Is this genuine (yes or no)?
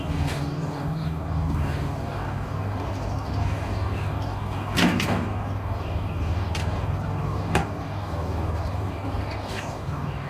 no